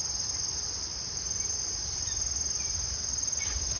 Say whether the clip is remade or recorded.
recorded